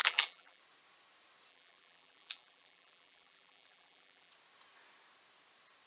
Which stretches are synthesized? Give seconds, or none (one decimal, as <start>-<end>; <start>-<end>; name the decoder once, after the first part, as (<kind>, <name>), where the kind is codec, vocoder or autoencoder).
0.0-0.6 (vocoder, BigVGAN v2); 1.5-4.3